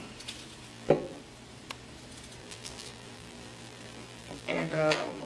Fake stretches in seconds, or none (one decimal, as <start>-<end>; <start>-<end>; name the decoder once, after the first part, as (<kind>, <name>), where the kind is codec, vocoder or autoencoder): 0.7-1.2 (vocoder, BigVGAN v2); 2.4-5.3